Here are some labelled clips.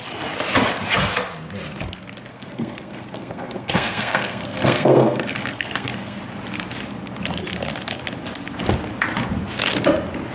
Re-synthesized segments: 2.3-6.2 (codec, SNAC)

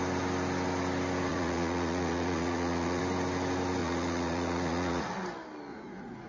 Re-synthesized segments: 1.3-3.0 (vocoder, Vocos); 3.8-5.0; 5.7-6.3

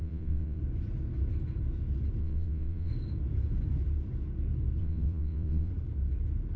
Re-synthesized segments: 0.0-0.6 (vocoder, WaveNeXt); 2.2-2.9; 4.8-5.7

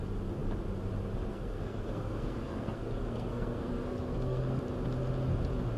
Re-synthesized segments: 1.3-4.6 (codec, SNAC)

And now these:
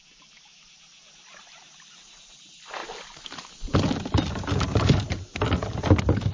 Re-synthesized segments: none

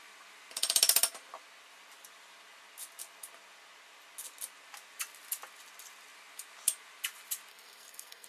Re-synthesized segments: 7.5-8.3 (codec, SNAC)